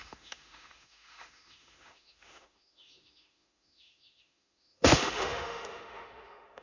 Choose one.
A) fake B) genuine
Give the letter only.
A